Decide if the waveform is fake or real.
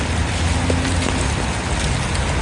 real